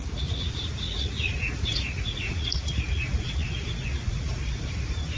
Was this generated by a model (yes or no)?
yes